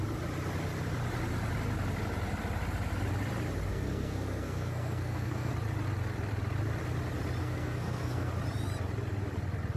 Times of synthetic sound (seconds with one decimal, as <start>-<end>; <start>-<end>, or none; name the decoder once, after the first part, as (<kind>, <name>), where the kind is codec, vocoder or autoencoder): 3.7-5.5 (codec, SNAC); 7.4-8.3